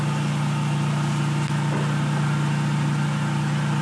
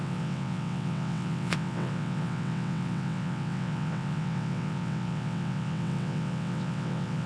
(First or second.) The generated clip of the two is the second